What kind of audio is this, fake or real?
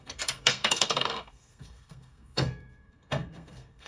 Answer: fake